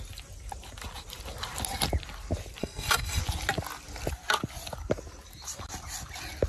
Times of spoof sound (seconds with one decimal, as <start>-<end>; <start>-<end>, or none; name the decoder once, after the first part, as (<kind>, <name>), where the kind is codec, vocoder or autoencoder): 2.6-3.2 (codec, SNAC)